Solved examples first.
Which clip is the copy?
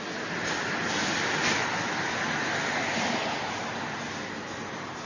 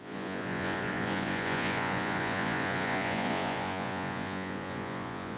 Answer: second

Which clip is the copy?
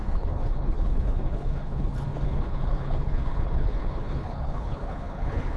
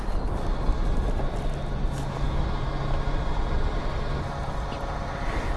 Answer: first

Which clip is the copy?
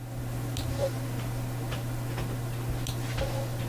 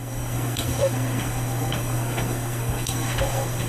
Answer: second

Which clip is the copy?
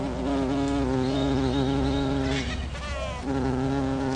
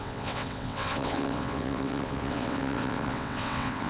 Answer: second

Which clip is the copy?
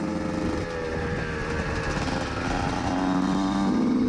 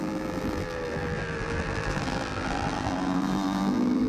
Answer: second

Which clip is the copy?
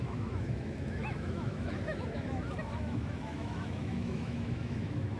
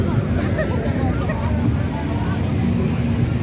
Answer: first